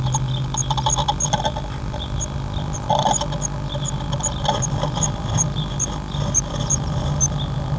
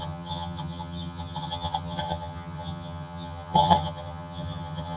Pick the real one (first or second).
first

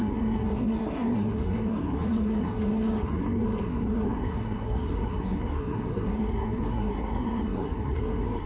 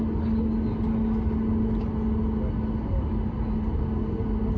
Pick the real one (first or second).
second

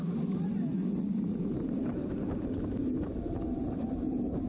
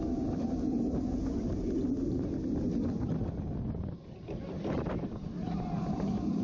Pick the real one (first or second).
second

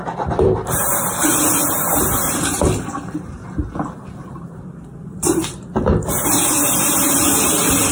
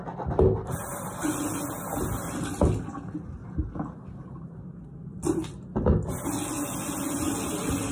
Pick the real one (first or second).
second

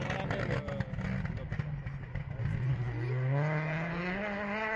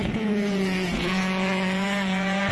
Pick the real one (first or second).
first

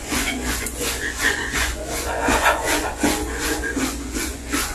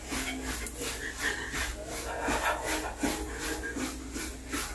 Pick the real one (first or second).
second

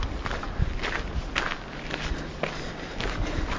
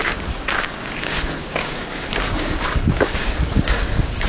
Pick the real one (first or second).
first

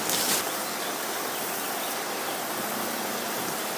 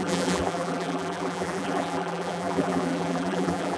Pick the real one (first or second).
first